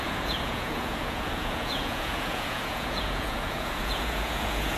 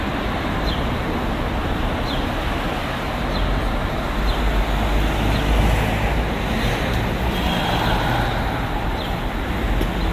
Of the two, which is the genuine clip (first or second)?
second